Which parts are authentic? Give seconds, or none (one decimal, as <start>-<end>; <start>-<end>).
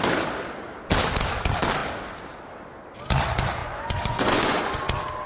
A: 0.0-3.6; 4.8-5.3